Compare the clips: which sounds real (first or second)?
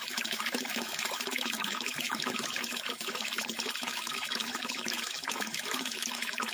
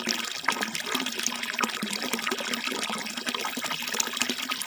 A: second